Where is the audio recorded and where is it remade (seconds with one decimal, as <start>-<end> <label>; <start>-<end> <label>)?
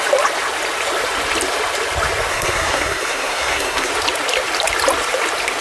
0.0-2.3 recorded; 2.3-3.9 remade; 3.9-5.6 recorded